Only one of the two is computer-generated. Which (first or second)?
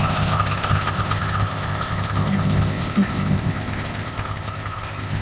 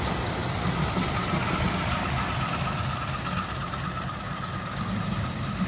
first